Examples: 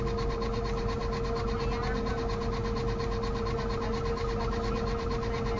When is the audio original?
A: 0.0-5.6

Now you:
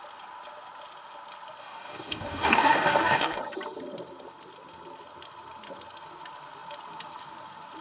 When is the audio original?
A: 0.0-1.6; 3.4-7.8

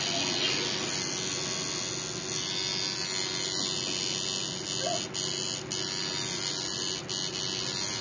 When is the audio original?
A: 0.0-8.0

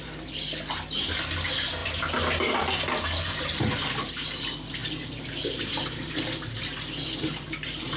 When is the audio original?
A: 0.0-8.0

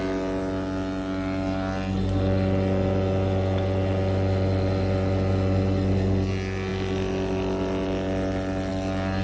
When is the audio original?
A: 0.0-9.2

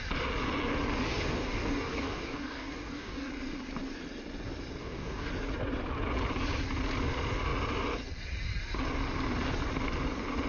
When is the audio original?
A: 0.0-1.1; 3.3-4.8; 5.3-10.5

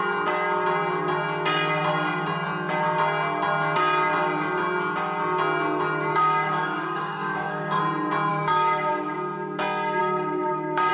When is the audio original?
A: 0.0-6.1; 7.8-8.3; 8.9-10.0